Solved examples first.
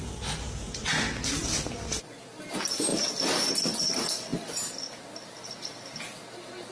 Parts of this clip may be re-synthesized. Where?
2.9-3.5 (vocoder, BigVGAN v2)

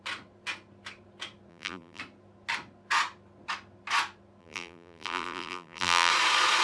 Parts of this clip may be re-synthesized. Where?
1.5-2.0 (vocoder, BigVGAN v2); 4.4-6.1

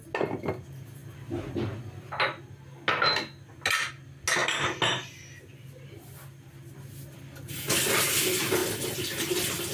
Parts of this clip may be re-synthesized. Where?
none

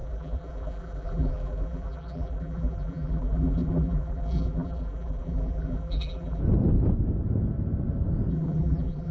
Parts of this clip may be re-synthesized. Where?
0.0-6.4 (vocoder, BigVGAN v2); 8.3-9.1

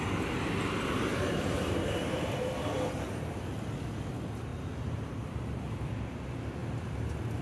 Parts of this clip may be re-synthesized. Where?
1.1-3.4 (vocoder, BigVGAN v2); 4.5-6.1

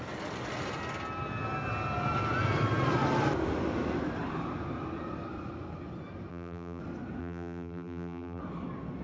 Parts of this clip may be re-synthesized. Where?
6.3-6.8 (vocoder, BigVGAN v2); 7.2-8.4